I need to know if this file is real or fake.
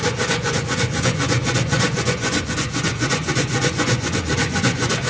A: fake